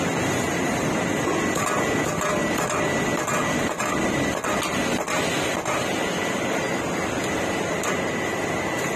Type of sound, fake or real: real